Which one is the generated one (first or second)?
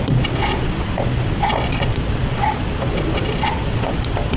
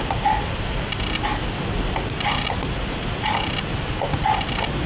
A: first